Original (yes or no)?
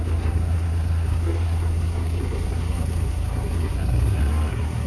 no